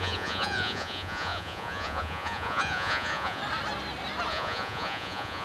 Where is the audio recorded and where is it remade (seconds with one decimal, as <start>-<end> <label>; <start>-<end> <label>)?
0.0-3.4 remade; 3.4-4.3 recorded; 4.3-5.4 remade